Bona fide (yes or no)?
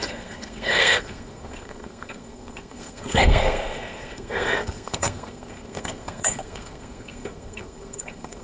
no